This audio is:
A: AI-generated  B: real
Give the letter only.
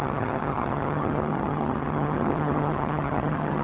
A